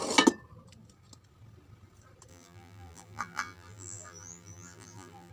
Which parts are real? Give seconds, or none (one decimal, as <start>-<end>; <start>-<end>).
0.0-2.3